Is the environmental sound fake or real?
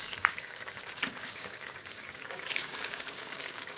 fake